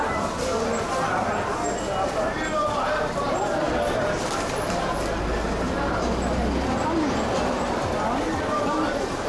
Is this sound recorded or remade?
recorded